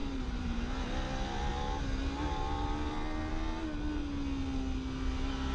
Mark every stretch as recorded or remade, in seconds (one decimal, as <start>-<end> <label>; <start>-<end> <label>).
0.0-0.6 remade; 0.6-5.5 recorded